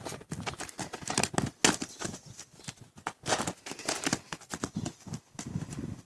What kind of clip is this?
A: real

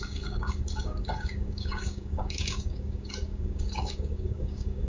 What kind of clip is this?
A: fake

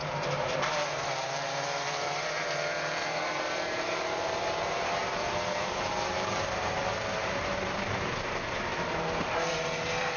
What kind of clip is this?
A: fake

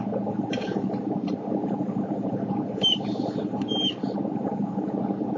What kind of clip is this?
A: fake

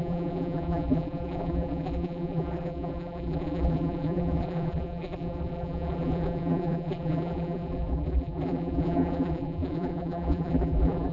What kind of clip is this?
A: fake